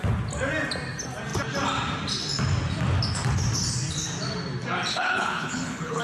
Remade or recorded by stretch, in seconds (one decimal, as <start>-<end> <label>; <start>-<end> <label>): 0.0-4.9 recorded; 4.9-6.0 remade